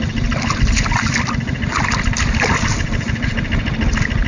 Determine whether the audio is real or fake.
real